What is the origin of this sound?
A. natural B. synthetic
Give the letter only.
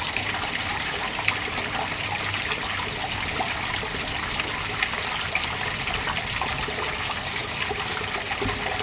A